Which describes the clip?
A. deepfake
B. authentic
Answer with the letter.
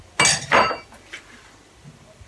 B